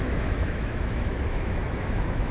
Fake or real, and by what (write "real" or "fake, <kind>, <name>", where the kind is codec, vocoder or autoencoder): fake, autoencoder, DAC-VAE